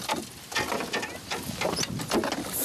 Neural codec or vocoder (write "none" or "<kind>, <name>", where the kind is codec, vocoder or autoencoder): none